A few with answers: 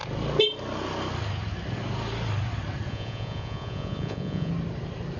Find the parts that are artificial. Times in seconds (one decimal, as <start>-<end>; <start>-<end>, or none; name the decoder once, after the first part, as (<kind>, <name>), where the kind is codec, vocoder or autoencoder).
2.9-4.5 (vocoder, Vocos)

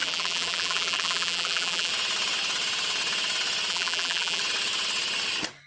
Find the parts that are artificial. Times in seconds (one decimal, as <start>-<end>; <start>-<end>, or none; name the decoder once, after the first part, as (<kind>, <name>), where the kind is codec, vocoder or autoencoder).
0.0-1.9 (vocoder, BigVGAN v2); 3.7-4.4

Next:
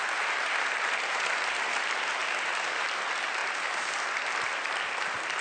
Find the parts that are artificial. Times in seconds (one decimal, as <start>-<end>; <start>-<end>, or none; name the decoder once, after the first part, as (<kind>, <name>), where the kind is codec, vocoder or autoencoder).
none

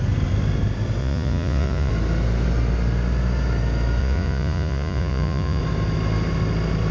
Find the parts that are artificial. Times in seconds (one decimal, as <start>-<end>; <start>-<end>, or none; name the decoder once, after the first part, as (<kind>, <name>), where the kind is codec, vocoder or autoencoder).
1.0-1.9 (vocoder, Vocos); 4.0-5.6